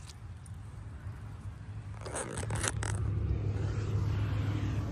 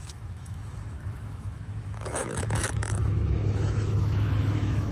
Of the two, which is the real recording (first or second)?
first